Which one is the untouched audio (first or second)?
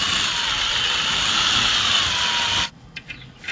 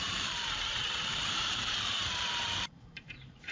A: first